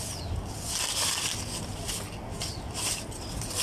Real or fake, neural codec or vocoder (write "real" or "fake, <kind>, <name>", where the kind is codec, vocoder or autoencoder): real